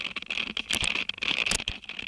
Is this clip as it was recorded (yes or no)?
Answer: yes